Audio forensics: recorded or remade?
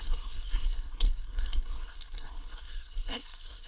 remade